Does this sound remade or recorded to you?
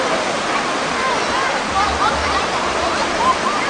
recorded